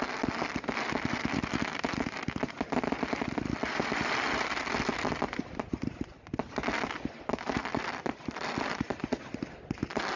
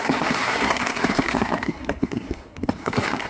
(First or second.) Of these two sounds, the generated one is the second